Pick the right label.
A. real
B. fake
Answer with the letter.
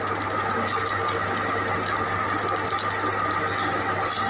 A